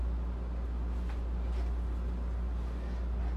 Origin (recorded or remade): recorded